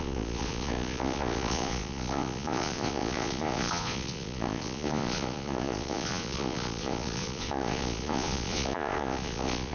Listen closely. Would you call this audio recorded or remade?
remade